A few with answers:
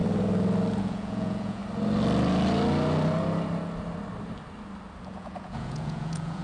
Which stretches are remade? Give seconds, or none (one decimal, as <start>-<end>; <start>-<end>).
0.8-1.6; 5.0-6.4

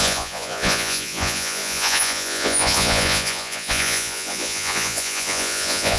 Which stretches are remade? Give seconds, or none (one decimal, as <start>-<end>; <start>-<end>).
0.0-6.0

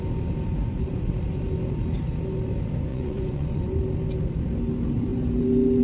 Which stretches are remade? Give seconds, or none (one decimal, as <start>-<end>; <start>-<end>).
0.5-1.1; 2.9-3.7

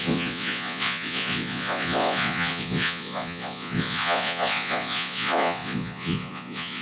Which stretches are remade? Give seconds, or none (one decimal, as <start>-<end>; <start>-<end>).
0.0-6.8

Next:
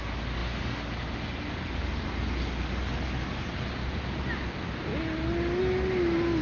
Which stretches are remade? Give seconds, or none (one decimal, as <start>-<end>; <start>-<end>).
none

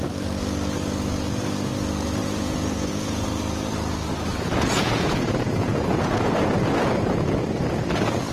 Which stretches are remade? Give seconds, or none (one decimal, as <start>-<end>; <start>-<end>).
2.2-3.4; 4.3-6.3